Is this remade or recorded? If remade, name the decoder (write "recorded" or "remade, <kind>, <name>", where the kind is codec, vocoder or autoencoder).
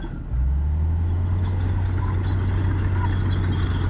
recorded